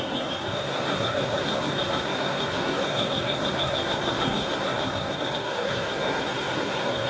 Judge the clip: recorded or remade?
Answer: remade